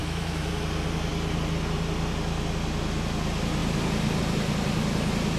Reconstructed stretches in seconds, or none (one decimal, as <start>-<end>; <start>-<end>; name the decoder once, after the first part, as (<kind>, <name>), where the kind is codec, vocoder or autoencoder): 0.0-0.5 (autoencoder, DAC-VAE)